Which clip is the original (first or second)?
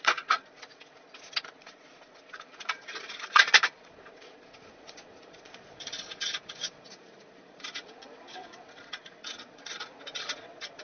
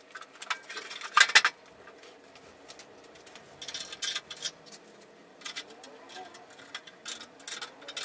second